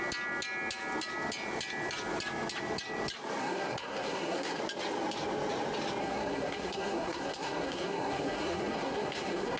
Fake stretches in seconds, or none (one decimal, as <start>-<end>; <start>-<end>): 3.4-4.6; 6.0-9.6